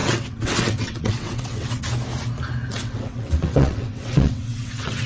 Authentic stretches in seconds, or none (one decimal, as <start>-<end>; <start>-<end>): 1.8-2.7